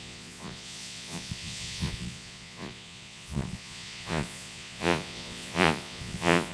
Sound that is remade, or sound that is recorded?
remade